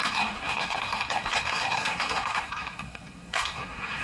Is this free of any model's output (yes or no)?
no